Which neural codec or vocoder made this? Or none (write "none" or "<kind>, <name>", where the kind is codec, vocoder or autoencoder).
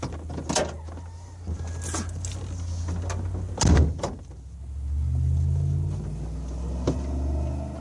none